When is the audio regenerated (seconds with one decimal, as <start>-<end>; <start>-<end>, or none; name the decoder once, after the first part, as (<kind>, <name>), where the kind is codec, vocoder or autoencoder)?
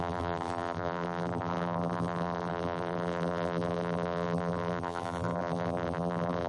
0.0-6.5 (vocoder, BigVGAN v2)